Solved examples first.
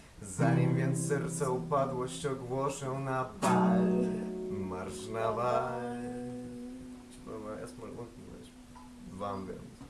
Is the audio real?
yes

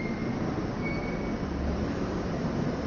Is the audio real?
yes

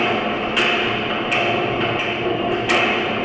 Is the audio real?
yes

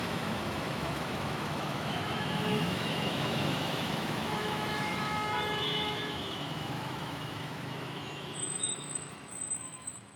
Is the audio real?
no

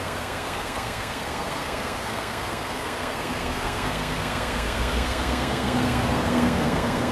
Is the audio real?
no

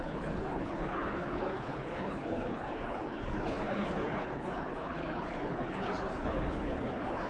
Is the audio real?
no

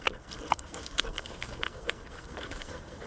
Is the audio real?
no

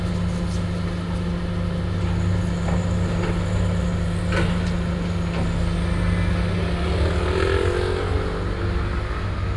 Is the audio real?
yes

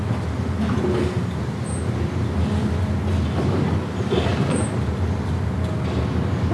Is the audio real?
yes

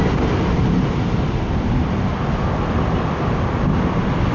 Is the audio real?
yes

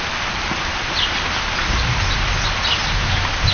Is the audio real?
yes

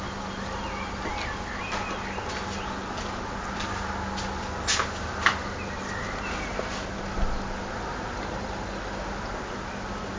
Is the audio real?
yes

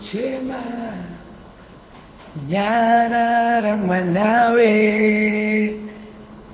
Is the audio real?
no